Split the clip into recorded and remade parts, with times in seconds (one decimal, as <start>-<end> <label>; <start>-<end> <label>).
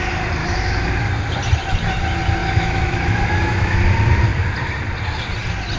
0.0-0.4 recorded; 0.4-0.9 remade; 0.9-2.4 recorded; 2.4-3.8 remade; 3.8-5.8 recorded